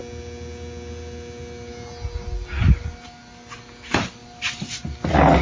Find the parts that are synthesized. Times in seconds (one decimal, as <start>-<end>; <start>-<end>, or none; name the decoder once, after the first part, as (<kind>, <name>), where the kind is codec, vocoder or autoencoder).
none